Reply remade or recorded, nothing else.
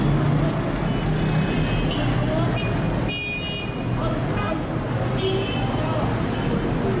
recorded